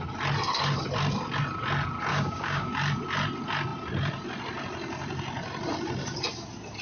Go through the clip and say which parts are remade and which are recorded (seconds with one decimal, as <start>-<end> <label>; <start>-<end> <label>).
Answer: 0.0-2.1 recorded; 2.1-2.7 remade; 2.7-6.8 recorded